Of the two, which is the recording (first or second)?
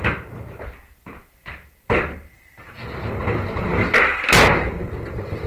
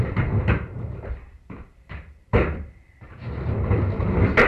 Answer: first